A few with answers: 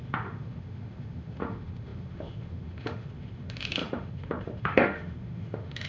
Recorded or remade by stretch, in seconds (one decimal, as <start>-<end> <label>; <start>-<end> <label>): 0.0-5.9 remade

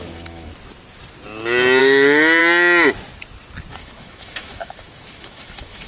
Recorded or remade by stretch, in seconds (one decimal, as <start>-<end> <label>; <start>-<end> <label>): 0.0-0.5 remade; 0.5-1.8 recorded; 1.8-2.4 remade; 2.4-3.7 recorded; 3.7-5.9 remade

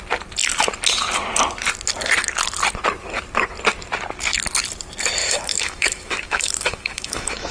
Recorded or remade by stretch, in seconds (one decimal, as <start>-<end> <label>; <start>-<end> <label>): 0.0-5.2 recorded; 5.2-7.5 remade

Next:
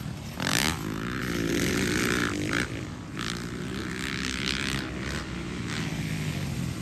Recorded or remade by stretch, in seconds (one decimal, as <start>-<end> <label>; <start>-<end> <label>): 0.0-0.5 recorded; 0.5-1.2 remade; 1.2-6.8 recorded

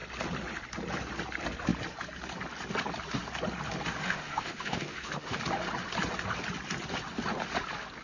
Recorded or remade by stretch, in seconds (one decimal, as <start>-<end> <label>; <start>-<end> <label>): 0.0-4.0 recorded; 4.0-5.4 remade; 5.4-8.0 recorded

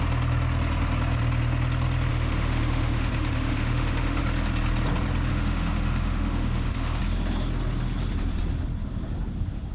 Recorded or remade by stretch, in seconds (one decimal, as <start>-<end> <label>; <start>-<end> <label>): 0.0-2.1 recorded; 2.1-4.2 remade; 4.2-5.3 recorded; 5.3-7.0 remade; 7.0-9.7 recorded

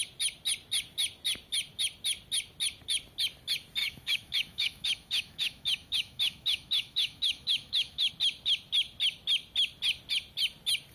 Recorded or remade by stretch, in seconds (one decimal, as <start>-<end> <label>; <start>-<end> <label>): 0.0-3.8 recorded; 3.8-8.1 remade; 8.1-10.9 recorded